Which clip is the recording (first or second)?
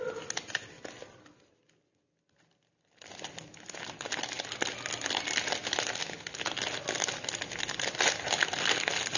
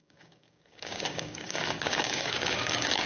first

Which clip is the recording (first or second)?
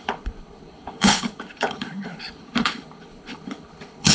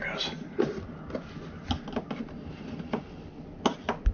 second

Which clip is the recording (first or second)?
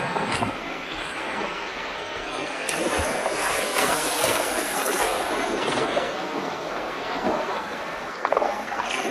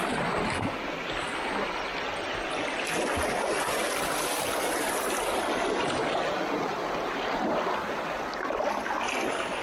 second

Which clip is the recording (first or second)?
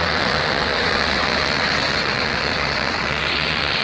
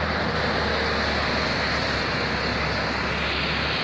second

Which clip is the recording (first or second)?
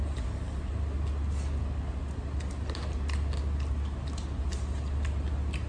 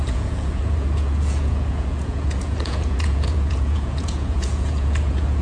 first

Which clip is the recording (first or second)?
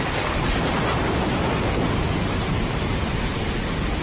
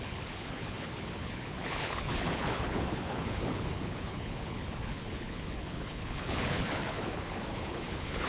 first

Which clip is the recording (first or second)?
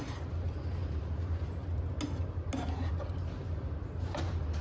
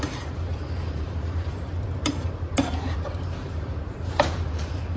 first